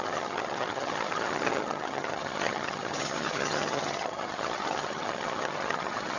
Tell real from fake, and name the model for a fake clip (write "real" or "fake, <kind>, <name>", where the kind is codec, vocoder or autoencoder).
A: fake, vocoder, HiFi-GAN